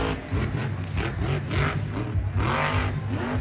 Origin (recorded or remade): recorded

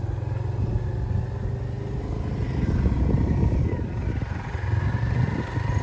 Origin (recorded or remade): recorded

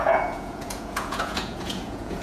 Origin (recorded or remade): remade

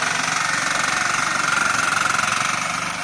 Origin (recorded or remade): recorded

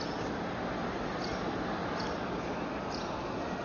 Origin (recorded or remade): recorded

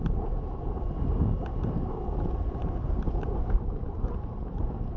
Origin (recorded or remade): recorded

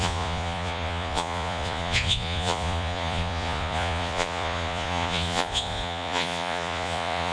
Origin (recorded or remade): remade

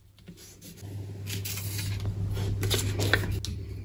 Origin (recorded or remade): recorded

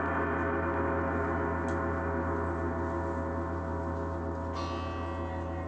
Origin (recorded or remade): recorded